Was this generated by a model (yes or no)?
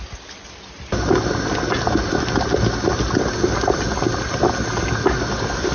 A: no